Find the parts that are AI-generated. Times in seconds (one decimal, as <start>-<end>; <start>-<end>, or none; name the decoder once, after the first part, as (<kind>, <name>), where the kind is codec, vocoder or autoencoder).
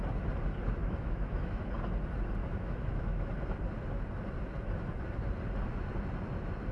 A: 0.8-1.7 (autoencoder, DAC-VAE); 2.4-3.3